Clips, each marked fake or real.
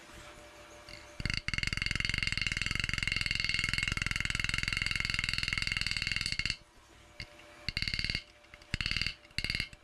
real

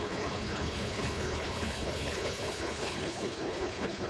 fake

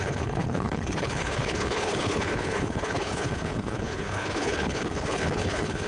fake